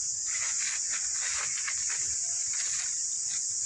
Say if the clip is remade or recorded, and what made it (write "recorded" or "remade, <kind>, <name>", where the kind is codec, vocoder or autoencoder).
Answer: recorded